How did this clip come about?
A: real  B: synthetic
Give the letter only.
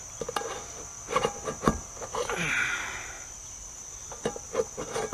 A